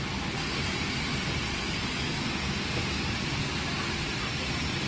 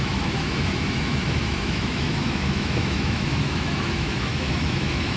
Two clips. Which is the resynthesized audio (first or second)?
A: second